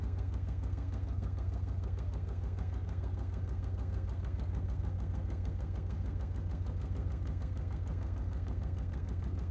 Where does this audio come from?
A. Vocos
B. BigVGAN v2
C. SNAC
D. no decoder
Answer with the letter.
C